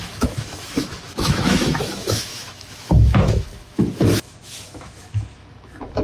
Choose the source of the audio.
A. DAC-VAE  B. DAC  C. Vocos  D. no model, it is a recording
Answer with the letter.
A